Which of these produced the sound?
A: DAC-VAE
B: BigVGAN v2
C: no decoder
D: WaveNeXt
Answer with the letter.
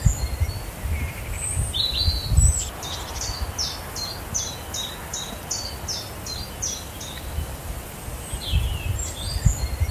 C